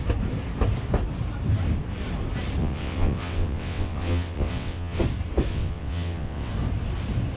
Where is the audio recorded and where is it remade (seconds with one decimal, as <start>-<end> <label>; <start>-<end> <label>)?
0.0-2.6 recorded; 2.6-5.0 remade; 5.0-5.5 recorded; 5.5-6.5 remade; 6.5-7.4 recorded